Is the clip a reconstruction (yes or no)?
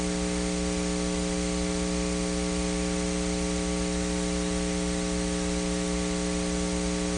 no